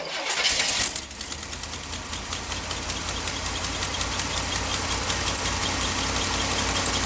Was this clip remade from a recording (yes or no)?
no